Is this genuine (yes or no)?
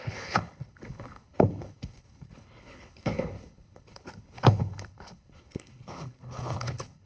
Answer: no